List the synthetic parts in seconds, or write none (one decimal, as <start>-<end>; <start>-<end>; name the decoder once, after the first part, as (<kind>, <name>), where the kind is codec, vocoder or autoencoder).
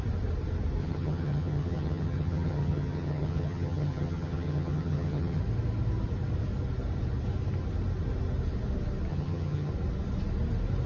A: 0.8-5.4 (vocoder, HiFi-GAN); 9.1-9.7